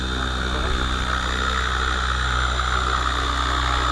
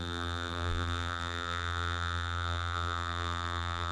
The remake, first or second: second